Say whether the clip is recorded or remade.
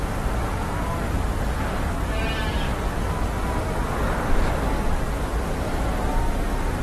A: recorded